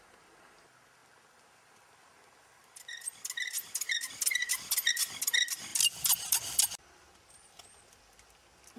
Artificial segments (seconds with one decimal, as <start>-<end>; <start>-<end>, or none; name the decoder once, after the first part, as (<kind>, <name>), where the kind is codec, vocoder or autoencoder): none

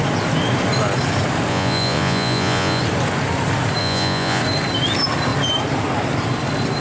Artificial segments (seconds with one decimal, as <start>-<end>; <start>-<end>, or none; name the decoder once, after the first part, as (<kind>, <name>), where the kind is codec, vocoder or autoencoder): 1.5-2.8 (vocoder, Vocos); 3.8-4.4

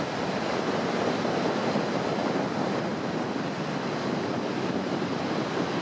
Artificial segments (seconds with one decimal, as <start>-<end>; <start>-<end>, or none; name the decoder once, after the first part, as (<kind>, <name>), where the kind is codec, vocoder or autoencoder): none

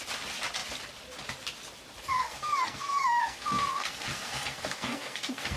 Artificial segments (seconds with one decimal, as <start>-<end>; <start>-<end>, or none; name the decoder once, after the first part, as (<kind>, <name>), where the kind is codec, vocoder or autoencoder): 2.1-5.6 (codec, SNAC)

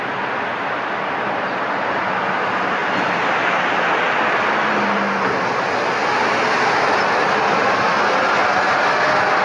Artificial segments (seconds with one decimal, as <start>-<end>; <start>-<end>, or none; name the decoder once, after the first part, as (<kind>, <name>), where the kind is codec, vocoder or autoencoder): none